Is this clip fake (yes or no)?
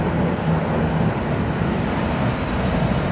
no